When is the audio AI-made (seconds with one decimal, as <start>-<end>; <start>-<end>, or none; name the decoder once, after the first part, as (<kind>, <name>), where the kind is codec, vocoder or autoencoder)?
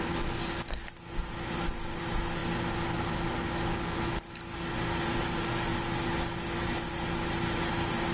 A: none